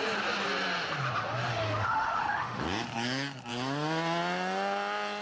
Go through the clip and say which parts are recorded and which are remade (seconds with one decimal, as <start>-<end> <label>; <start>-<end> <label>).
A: 0.0-1.5 recorded; 1.5-2.6 remade; 2.6-5.2 recorded